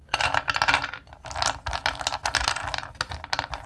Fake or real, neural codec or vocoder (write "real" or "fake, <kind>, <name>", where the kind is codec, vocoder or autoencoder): real